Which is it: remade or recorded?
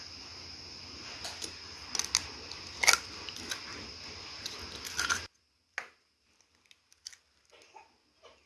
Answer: recorded